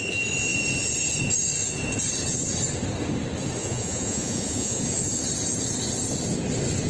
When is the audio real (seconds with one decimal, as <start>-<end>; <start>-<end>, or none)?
0.0-3.6; 4.8-6.9